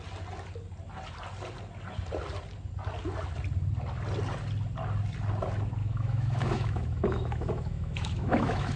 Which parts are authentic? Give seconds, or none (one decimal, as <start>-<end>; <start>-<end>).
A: 0.0-5.8

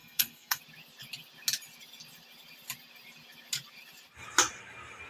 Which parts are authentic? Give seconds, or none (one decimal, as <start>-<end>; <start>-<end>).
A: 0.6-5.1

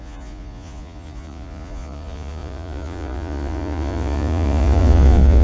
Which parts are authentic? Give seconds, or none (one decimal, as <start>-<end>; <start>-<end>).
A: none

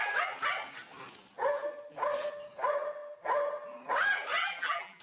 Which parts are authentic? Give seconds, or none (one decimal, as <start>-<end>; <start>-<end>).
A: 0.0-4.4